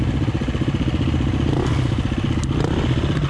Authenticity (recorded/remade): recorded